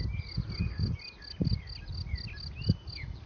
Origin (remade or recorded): recorded